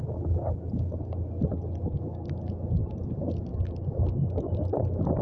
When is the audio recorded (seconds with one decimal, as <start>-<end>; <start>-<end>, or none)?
0.0-3.5